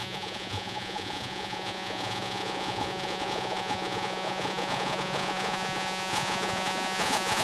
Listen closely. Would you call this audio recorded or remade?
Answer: remade